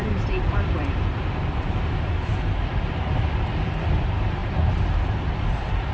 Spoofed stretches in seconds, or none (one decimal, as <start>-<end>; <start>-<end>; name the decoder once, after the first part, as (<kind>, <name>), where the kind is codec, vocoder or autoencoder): 0.0-4.4 (vocoder, BigVGAN v2); 5.3-5.9